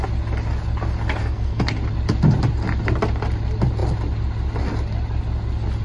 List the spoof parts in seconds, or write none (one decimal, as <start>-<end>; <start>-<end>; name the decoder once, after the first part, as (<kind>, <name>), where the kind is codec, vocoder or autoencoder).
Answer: 1.2-1.7 (codec, SNAC)